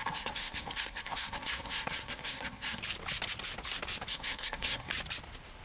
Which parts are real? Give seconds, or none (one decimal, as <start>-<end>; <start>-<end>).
2.8-4.1; 4.9-5.6